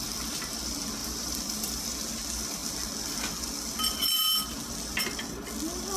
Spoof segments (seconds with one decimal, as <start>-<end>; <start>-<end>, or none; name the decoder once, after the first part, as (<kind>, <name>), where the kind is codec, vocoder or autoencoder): 1.0-1.8 (vocoder, BigVGAN v2)